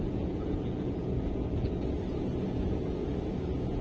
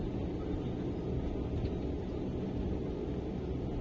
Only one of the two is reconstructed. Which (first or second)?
first